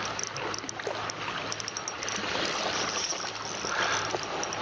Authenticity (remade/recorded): recorded